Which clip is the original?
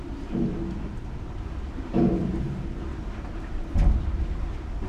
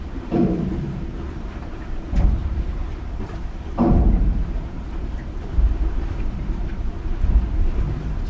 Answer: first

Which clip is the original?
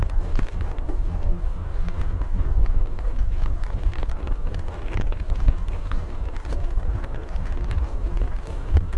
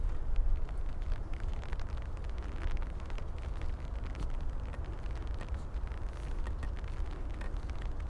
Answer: second